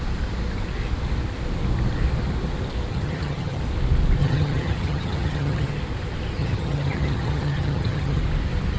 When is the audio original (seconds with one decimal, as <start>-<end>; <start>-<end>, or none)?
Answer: 0.0-2.9; 3.6-4.2; 5.7-6.4; 8.2-8.8